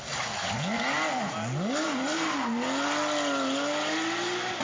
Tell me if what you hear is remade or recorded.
recorded